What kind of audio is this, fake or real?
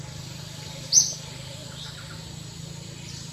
real